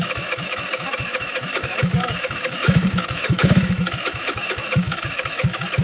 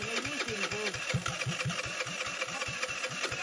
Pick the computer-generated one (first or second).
first